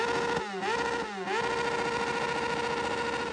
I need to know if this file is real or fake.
real